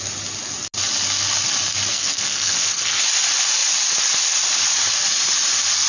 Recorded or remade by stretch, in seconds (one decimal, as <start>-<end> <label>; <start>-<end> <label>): 0.0-1.9 recorded; 1.9-3.0 remade; 3.0-5.9 recorded